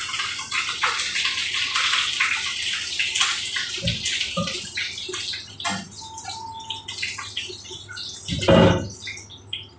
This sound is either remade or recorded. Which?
recorded